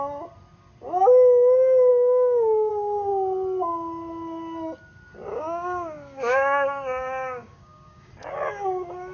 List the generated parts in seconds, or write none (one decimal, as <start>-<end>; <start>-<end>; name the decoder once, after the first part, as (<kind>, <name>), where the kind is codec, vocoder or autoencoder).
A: 1.9-2.7 (codec, DAC); 5.3-8.1